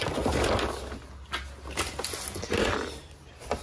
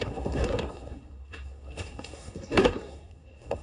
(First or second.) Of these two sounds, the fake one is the second